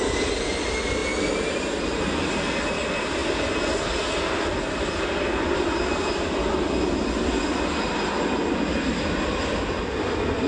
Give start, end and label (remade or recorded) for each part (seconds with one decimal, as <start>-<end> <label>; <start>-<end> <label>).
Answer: 0.0-10.5 recorded